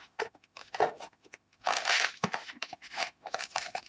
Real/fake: fake